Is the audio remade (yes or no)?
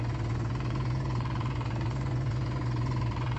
yes